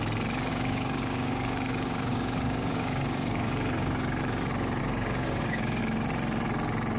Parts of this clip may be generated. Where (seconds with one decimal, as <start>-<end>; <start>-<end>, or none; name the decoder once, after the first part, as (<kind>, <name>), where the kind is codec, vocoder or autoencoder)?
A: 0.5-4.2 (codec, DAC); 4.8-5.8